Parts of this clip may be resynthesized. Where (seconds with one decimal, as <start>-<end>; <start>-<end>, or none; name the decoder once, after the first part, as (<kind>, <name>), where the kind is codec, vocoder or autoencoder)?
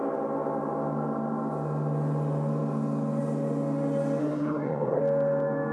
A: 4.2-5.0 (codec, SNAC)